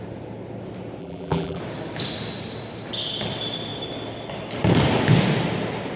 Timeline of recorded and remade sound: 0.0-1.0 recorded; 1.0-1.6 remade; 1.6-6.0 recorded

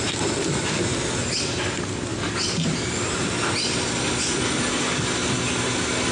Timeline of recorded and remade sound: 0.0-6.1 recorded

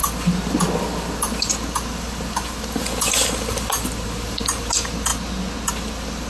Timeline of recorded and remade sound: 0.0-5.1 remade; 5.1-5.7 recorded; 5.7-6.3 remade